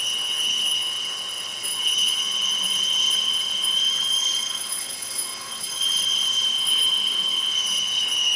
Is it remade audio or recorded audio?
remade